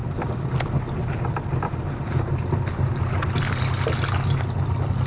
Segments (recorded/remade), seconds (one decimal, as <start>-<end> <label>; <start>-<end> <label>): 0.0-5.1 recorded